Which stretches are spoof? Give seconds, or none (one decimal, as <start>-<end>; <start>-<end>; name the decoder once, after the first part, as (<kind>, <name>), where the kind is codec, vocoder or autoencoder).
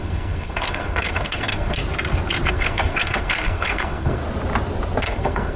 0.0-1.8 (codec, SNAC); 2.5-4.2; 5.0-5.6